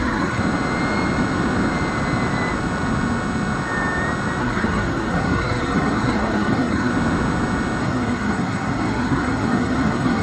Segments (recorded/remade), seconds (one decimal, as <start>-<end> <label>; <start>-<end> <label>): 0.0-0.4 remade; 0.4-4.4 recorded; 4.4-6.9 remade; 6.9-7.8 recorded; 7.8-10.2 remade